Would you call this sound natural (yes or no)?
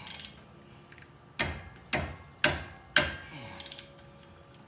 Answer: yes